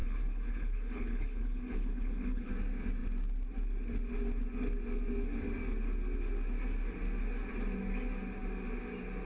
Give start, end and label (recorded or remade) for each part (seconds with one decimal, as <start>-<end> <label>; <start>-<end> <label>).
0.0-2.5 remade; 2.5-9.2 recorded